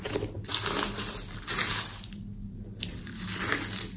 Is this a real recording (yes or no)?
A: yes